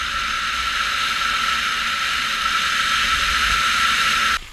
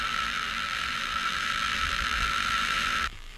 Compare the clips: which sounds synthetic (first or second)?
second